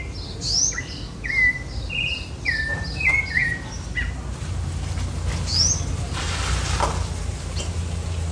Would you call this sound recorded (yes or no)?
yes